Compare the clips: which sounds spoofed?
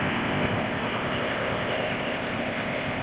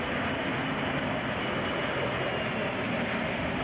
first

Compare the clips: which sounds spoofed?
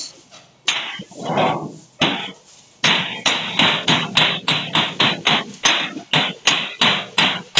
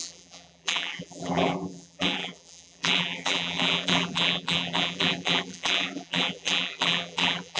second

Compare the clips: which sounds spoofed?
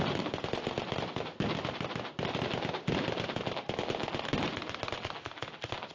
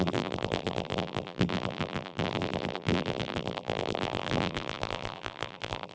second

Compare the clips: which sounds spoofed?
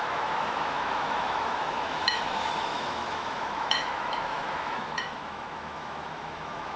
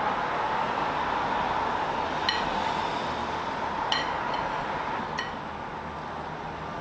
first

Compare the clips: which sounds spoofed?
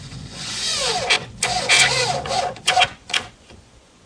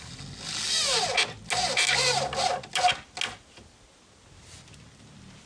first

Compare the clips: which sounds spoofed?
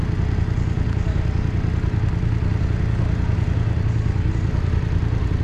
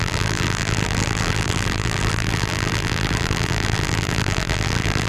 second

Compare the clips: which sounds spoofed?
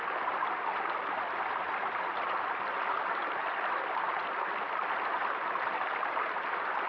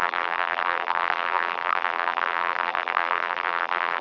second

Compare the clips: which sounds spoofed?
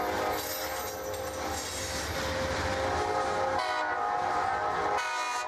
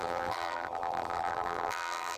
second